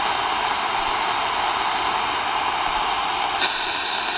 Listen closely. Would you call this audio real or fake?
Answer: real